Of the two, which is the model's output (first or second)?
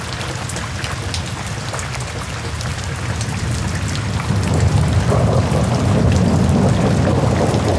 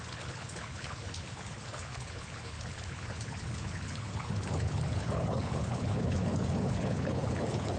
second